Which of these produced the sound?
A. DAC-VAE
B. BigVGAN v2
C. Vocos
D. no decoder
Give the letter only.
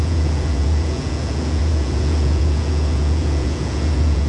C